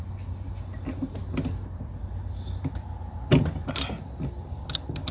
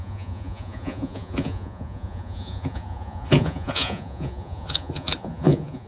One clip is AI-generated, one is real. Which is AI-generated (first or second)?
second